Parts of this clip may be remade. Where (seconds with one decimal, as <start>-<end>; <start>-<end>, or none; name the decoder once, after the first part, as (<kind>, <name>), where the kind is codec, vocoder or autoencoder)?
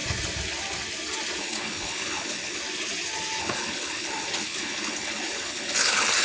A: 1.4-2.6 (codec, HILCodec); 3.4-6.2